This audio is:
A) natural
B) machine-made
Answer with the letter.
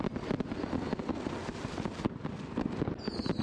A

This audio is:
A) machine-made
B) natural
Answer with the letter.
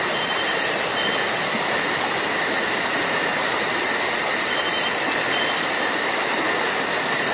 B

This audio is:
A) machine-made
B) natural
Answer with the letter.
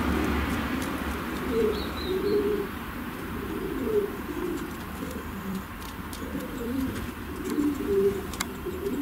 A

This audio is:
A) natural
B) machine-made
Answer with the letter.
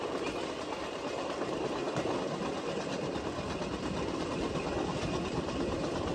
A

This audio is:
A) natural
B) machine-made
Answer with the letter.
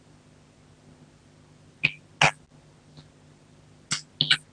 A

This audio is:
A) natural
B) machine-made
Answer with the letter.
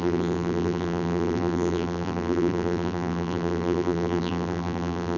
B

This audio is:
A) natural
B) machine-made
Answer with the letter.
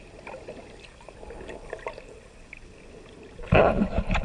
A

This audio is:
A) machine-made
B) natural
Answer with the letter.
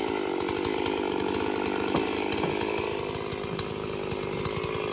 B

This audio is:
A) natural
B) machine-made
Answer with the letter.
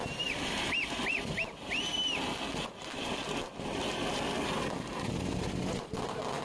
A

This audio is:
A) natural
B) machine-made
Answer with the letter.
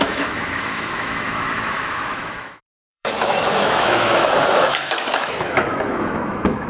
B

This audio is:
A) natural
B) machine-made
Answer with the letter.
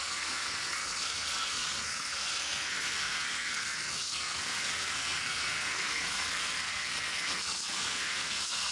B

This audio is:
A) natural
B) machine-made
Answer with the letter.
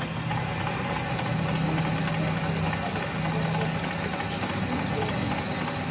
A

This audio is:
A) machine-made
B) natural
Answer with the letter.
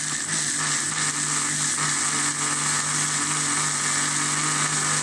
B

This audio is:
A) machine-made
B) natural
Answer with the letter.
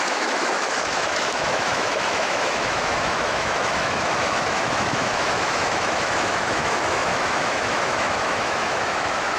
A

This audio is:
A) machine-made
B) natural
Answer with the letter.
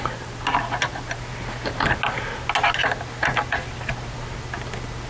B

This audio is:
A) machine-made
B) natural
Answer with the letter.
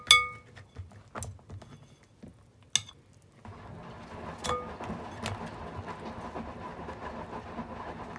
B